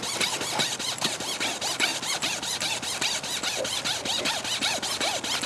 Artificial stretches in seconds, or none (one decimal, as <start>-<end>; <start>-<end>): none